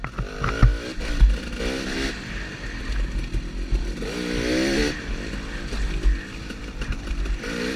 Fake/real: real